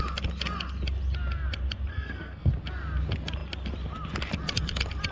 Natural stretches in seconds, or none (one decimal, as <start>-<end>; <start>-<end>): 0.0-1.9; 2.5-5.1